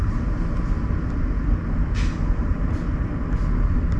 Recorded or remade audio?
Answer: recorded